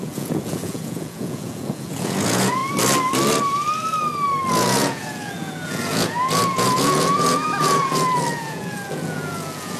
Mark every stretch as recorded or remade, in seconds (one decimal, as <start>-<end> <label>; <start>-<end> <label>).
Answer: 0.0-2.6 remade; 2.6-4.5 recorded; 4.5-9.8 remade